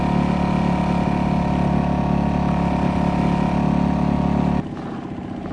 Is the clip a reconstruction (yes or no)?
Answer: no